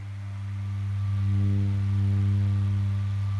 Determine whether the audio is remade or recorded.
recorded